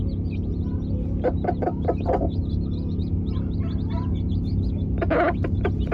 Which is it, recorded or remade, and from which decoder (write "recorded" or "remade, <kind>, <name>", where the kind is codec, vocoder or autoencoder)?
recorded